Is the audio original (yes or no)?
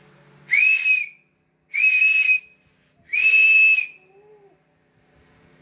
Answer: yes